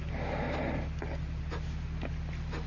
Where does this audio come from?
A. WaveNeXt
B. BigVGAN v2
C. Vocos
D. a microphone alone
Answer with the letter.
B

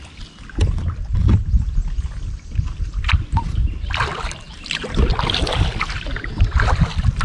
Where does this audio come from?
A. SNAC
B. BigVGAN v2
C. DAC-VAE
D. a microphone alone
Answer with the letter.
D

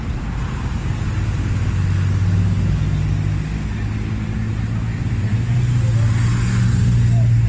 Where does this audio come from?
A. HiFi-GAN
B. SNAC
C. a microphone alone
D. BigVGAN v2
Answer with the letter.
C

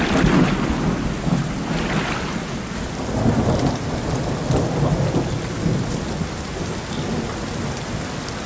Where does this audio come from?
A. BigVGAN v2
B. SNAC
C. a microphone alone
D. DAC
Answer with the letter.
C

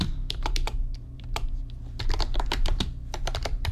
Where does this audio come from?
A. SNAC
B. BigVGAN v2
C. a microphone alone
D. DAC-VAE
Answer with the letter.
B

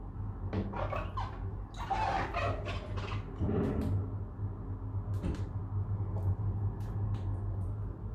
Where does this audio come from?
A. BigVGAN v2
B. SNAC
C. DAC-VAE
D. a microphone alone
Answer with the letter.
D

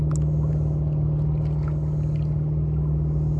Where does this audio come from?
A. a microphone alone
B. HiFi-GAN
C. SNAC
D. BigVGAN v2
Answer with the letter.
A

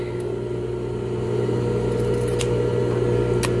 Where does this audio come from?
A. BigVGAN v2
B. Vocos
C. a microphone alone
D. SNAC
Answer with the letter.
C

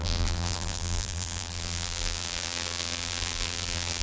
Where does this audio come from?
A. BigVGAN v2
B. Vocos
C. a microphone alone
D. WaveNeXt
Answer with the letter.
A